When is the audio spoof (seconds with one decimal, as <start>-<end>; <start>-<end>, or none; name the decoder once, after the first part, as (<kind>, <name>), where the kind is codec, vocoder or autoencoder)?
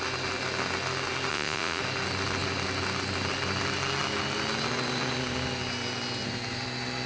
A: 1.3-1.8 (vocoder, Vocos)